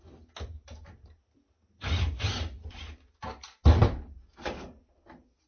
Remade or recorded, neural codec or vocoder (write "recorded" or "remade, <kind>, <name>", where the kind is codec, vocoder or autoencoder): recorded